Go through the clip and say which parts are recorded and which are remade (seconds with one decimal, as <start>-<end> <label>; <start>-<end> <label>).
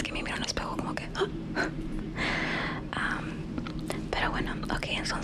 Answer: 0.0-0.7 recorded; 0.7-3.8 remade; 3.8-5.2 recorded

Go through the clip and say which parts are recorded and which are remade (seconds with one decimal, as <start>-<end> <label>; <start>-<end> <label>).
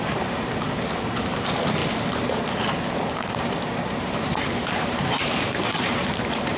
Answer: 0.0-1.8 remade; 1.8-3.4 recorded; 3.4-6.6 remade